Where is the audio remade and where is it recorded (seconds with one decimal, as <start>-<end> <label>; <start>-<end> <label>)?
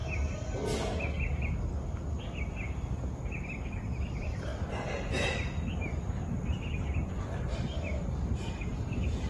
0.0-3.7 recorded; 3.7-9.3 remade